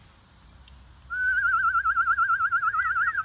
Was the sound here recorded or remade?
recorded